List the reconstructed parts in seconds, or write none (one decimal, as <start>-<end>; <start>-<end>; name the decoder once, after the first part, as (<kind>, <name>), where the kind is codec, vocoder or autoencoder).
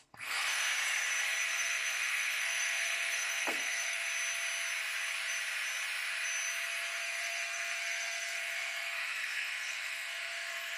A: 0.0-0.7 (codec, SNAC); 1.5-4.0; 6.9-10.8